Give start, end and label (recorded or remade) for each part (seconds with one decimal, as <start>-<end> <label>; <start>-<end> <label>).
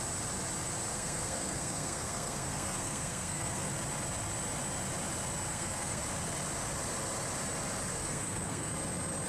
0.0-0.9 recorded; 0.9-3.7 remade; 3.7-5.5 recorded; 5.5-6.0 remade; 6.0-7.9 recorded; 7.9-8.7 remade; 8.7-9.3 recorded